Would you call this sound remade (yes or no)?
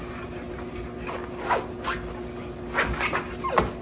no